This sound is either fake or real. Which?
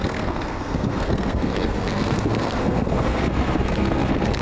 fake